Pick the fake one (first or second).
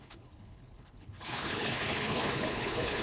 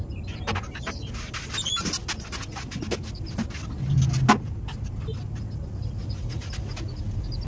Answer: first